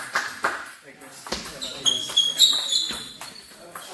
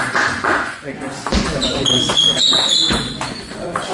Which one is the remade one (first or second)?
second